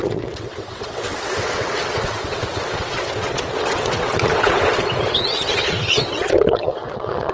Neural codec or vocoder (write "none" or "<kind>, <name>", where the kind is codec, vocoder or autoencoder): vocoder, WaveNeXt